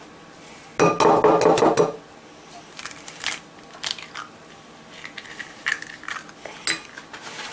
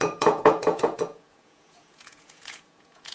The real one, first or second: first